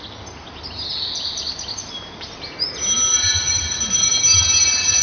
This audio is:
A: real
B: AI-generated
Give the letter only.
A